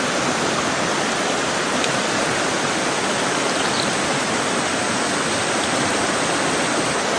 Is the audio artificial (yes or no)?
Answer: no